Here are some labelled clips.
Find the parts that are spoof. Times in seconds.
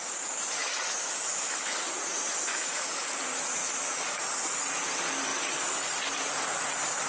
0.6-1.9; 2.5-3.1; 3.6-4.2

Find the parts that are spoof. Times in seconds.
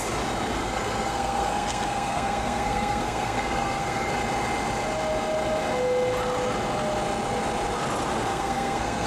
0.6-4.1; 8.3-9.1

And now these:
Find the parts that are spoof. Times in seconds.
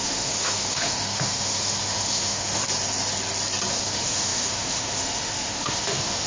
0.0-2.6; 3.7-6.3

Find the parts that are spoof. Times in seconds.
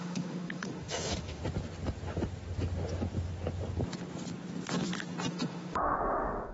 0.0-1.4; 5.3-6.5